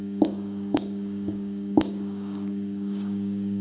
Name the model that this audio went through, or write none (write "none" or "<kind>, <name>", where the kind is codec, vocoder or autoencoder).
codec, DAC